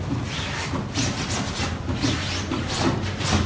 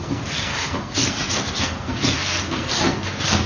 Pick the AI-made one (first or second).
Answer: second